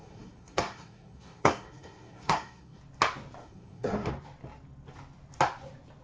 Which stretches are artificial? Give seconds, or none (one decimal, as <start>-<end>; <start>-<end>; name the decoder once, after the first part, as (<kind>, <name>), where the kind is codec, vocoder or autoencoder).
0.0-2.8 (codec, SNAC); 3.4-4.1